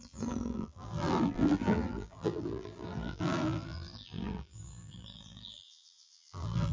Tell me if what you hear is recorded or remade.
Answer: remade